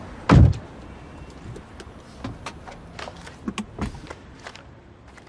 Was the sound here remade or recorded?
recorded